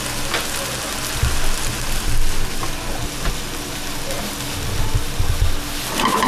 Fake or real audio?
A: real